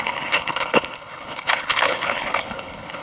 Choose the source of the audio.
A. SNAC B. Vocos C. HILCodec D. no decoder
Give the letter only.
C